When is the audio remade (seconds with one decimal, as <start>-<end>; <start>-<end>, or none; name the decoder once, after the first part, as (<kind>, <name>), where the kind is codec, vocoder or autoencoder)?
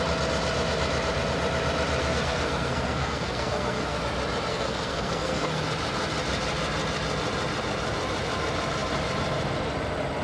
2.0-4.0 (codec, SNAC); 4.5-5.6